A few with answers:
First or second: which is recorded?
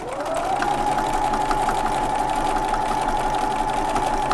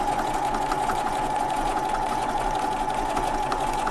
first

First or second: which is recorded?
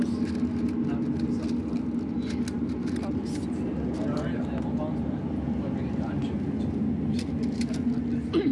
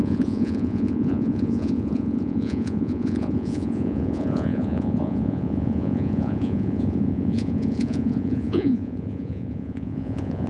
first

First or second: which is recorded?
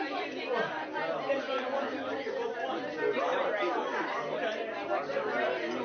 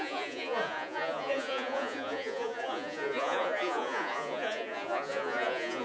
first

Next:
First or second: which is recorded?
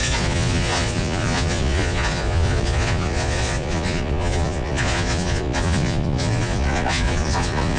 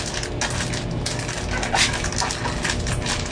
second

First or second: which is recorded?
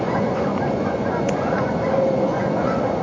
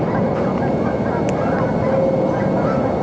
second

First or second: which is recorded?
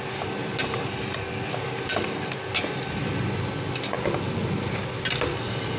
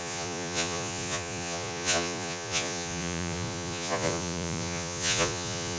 first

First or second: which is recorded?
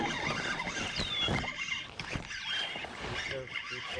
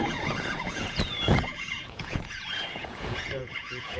first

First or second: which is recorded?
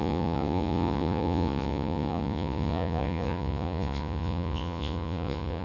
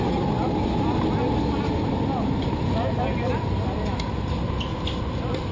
second